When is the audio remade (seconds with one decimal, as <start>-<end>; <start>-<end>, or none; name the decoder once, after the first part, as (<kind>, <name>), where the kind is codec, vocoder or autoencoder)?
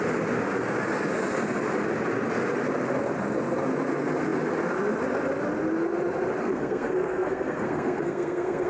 6.4-8.7 (codec, SNAC)